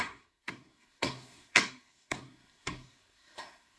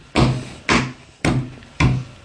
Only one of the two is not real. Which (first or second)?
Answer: first